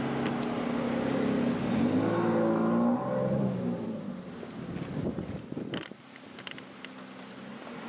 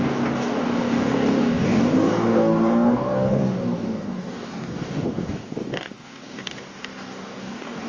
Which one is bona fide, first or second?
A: first